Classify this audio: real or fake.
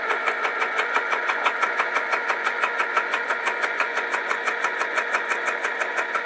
fake